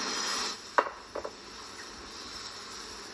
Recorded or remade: recorded